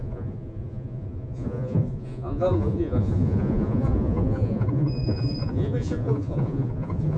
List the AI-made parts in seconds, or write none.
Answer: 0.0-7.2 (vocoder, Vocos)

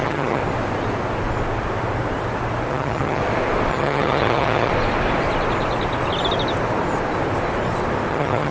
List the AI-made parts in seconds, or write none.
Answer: 0.0-0.4 (vocoder, HiFi-GAN); 2.7-3.2; 3.7-4.7; 8.1-8.5

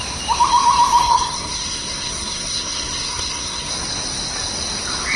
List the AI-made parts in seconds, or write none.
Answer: 1.0-3.7 (codec, SNAC)

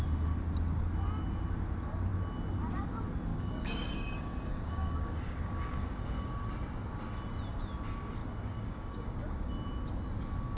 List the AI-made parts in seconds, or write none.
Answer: 3.3-6.3 (codec, DAC); 8.2-9.5

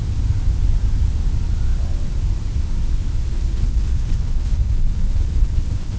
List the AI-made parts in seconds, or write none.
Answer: 3.3-6.0 (codec, HILCodec)

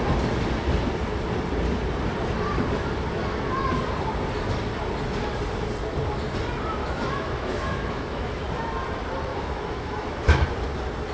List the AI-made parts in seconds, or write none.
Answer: 6.8-8.4 (autoencoder, DAC-VAE); 9.3-10.4

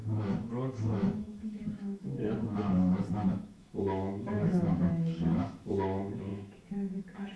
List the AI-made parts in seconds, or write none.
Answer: 0.0-7.4 (autoencoder, DAC-VAE)